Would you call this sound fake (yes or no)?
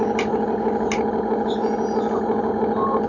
no